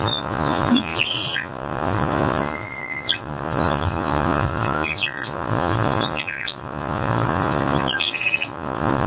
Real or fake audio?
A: fake